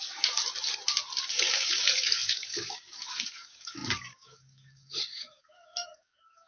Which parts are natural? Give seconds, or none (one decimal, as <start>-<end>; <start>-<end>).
0.4-1.2